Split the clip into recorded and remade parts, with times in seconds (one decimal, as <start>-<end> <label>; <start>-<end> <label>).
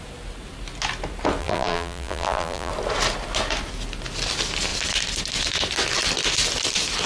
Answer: 0.0-1.4 recorded; 1.4-2.7 remade; 2.7-7.1 recorded